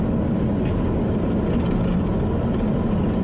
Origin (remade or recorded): recorded